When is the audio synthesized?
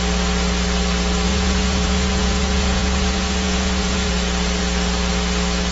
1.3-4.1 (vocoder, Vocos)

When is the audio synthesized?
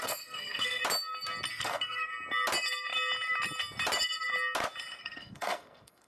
0.0-0.8 (codec, SNAC); 1.5-2.1; 5.0-6.1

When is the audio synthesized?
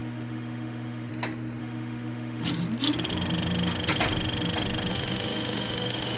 0.0-1.1 (autoencoder, DAC-VAE); 1.6-2.5; 4.9-6.2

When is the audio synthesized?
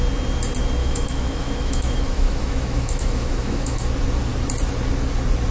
0.8-3.9 (autoencoder, DAC-VAE)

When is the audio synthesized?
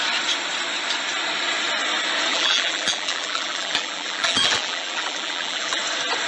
2.3-5.8 (vocoder, BigVGAN v2)